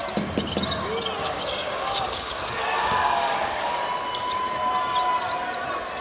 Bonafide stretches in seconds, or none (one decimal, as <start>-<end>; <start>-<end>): 0.0-1.2; 3.8-6.0